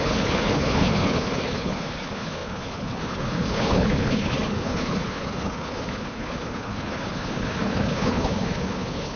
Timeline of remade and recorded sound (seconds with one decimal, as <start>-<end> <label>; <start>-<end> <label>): 0.0-9.2 remade